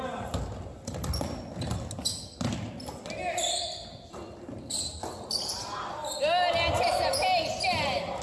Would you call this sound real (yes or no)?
yes